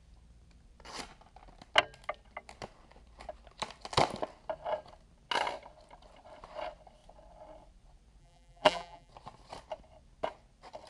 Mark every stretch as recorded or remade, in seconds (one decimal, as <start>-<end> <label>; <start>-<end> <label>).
0.0-8.2 recorded; 8.2-9.1 remade; 9.1-10.9 recorded